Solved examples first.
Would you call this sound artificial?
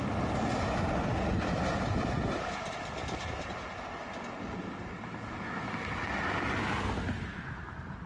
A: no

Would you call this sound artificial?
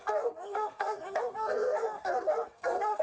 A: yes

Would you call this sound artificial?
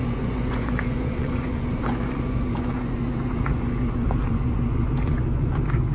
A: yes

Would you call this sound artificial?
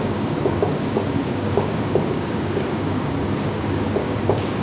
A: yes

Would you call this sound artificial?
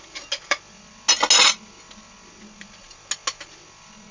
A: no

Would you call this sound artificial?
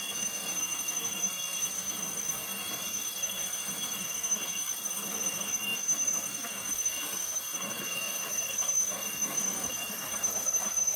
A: yes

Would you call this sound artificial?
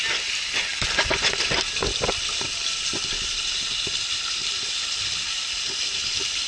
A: no